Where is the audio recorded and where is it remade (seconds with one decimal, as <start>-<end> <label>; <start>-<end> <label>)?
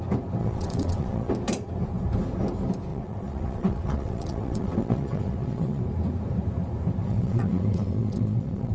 0.0-0.4 recorded; 0.4-1.3 remade; 1.3-2.9 recorded; 2.9-5.8 remade; 5.8-7.0 recorded; 7.0-8.7 remade